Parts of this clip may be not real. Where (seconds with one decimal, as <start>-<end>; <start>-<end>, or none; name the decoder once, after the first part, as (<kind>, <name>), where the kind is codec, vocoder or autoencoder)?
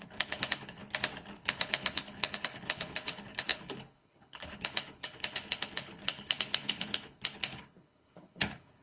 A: 0.0-0.8 (codec, HILCodec); 1.4-8.8